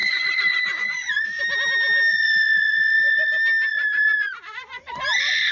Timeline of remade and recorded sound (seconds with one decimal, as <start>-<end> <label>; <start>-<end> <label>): 0.0-1.4 remade; 1.4-2.1 recorded; 2.1-3.3 remade; 3.3-3.7 recorded; 3.7-5.0 remade; 5.0-5.5 recorded